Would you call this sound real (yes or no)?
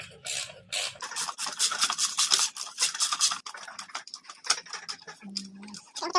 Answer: yes